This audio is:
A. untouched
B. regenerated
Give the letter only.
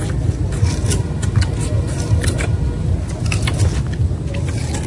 A